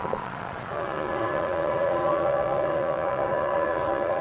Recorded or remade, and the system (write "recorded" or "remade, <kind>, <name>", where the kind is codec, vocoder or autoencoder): remade, vocoder, Vocos